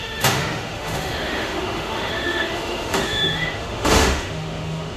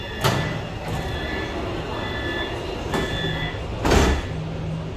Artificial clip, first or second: first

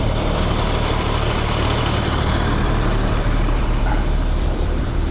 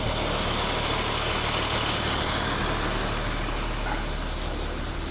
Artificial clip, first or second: first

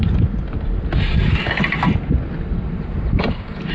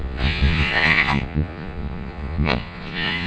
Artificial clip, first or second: second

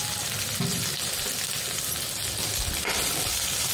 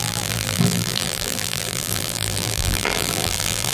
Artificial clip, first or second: second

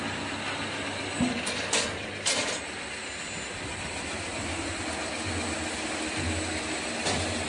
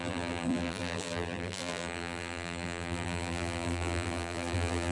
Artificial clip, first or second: second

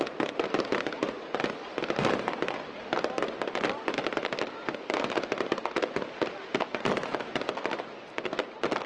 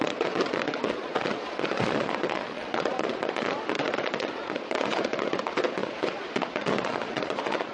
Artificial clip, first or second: second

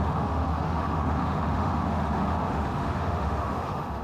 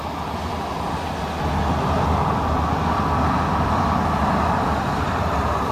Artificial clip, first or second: first